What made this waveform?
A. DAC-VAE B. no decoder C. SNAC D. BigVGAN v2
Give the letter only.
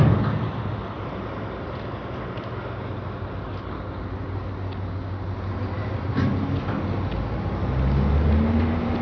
B